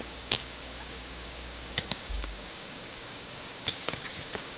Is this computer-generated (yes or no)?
yes